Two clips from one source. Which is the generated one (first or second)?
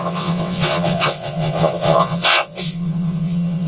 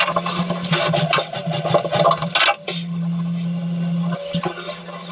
first